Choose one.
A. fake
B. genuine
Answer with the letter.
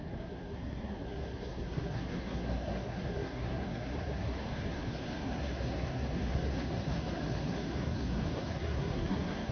A